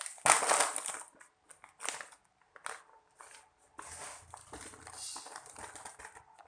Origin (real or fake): real